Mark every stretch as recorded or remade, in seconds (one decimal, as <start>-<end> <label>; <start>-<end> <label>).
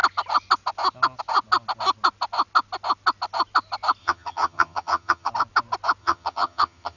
0.0-4.0 recorded; 4.0-5.3 remade; 5.3-6.0 recorded; 6.0-7.0 remade